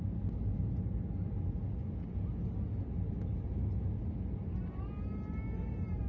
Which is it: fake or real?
real